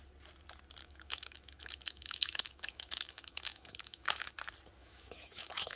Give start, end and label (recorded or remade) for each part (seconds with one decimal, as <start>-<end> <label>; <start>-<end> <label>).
0.0-0.8 recorded; 0.8-4.3 remade; 4.3-4.8 recorded; 4.8-5.8 remade